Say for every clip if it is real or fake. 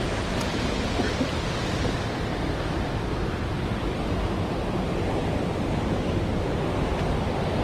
real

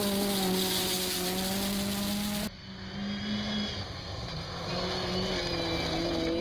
real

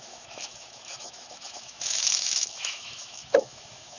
fake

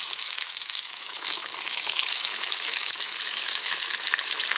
fake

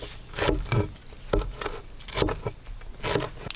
real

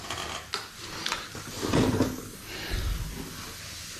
real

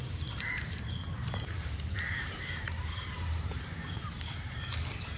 fake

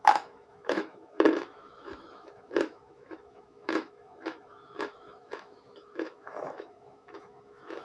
fake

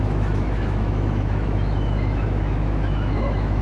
fake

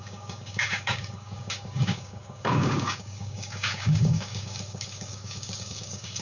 fake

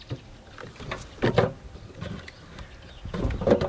real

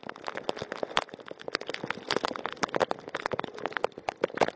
real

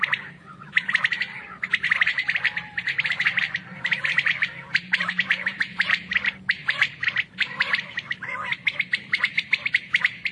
fake